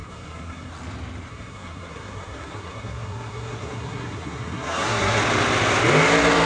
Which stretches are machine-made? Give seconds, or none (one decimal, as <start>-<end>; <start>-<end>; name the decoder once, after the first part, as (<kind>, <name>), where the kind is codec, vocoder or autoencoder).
0.0-0.7 (codec, SNAC); 1.3-5.2